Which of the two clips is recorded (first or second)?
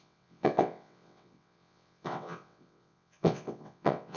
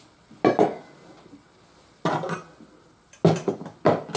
second